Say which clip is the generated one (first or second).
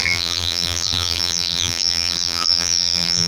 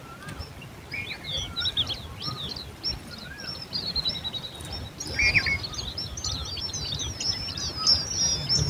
first